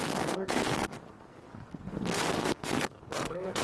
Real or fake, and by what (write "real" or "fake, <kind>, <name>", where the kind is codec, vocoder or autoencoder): fake, codec, SNAC